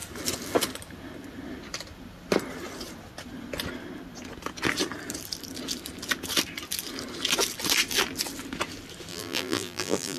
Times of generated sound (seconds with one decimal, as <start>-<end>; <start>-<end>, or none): 9.1-10.2